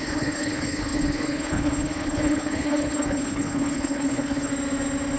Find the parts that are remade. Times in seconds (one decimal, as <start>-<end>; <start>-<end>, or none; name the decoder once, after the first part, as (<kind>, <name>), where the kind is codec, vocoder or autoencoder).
0.0-4.5 (codec, HILCodec)